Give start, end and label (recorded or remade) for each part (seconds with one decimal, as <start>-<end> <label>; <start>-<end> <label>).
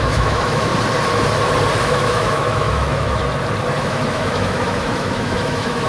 0.0-0.7 remade; 0.7-1.8 recorded; 1.8-3.2 remade; 3.2-3.8 recorded; 3.8-5.9 remade